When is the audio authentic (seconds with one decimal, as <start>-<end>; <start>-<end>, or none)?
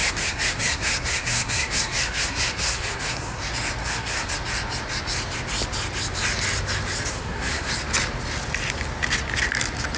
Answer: 3.4-3.8; 4.3-7.1; 7.7-10.0